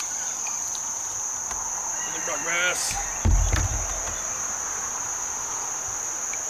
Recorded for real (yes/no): yes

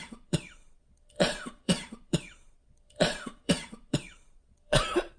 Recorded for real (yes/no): no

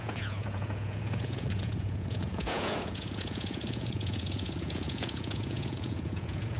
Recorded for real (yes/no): no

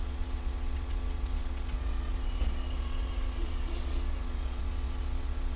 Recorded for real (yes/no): no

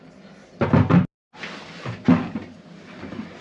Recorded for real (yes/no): yes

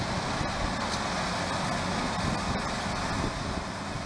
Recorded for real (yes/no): yes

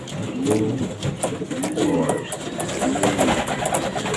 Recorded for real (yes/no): yes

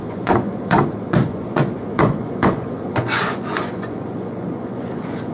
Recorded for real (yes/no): no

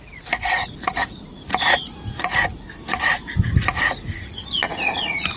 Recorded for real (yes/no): no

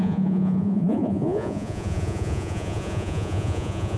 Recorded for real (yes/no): no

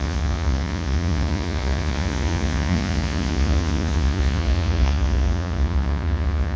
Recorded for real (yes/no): no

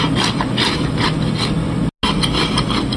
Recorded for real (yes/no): yes